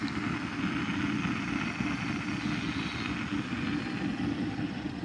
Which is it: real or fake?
real